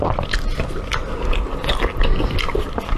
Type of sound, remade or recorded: recorded